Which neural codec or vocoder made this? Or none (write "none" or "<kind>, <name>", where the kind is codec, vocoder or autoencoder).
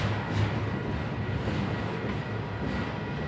none